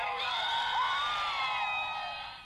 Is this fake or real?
real